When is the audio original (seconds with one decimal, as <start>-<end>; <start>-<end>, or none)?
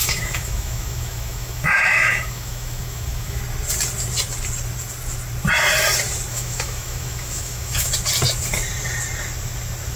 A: 3.4-6.3; 7.9-10.0